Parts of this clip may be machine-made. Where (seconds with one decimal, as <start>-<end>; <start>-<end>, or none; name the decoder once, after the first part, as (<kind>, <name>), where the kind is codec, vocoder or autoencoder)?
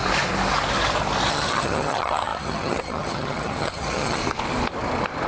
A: 1.3-4.2 (vocoder, HiFi-GAN)